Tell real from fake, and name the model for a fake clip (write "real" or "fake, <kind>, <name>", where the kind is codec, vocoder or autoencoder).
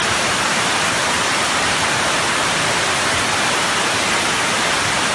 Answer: fake, vocoder, BigVGAN v2